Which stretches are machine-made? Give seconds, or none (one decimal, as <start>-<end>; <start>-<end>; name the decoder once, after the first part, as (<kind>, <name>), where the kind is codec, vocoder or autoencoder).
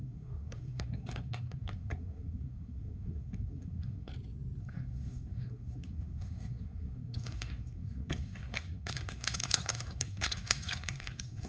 0.0-4.1 (codec, SNAC); 4.6-11.5